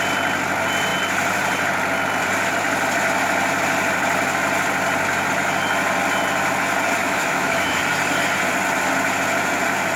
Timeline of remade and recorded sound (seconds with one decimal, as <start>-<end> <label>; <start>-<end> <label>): 0.0-7.0 recorded; 7.0-7.8 remade; 7.8-10.0 recorded